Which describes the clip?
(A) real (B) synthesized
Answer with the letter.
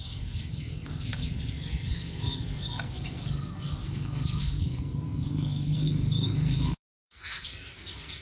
B